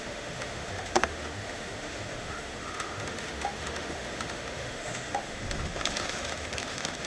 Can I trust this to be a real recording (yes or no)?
no